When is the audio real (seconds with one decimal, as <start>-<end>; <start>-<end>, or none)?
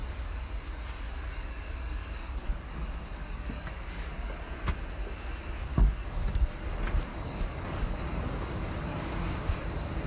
4.4-5.7; 6.4-7.1; 9.1-10.1